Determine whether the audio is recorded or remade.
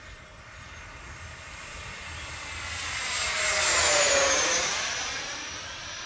recorded